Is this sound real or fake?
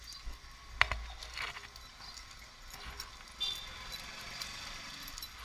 real